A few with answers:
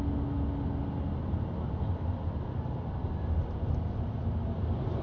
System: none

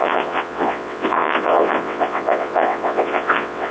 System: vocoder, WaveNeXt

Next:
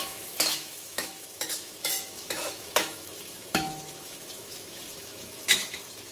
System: autoencoder, DAC-VAE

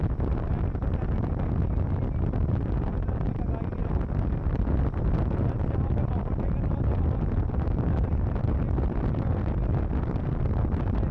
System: none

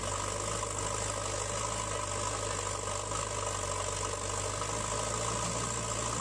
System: none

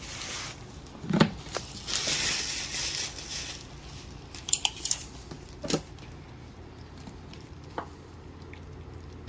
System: none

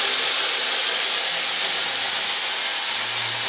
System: none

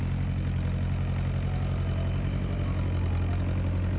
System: none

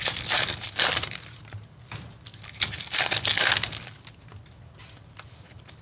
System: none